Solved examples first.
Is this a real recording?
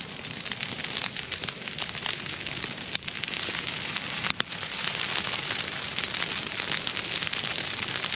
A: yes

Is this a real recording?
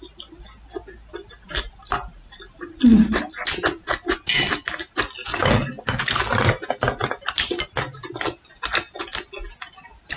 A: yes